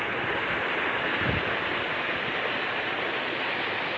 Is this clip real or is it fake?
real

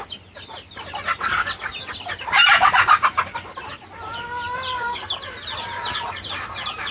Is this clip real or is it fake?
real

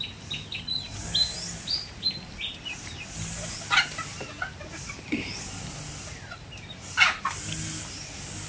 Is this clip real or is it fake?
real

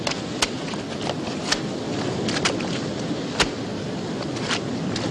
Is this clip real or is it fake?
real